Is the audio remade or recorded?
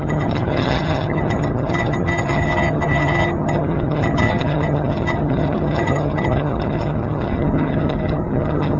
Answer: remade